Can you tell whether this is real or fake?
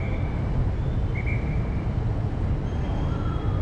real